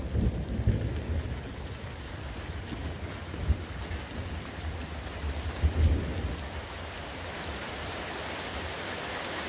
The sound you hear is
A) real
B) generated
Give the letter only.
A